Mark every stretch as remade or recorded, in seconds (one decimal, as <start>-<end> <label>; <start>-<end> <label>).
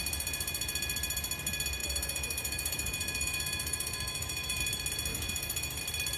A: 0.0-1.8 recorded; 1.8-4.6 remade; 4.6-5.1 recorded; 5.1-5.8 remade; 5.8-6.2 recorded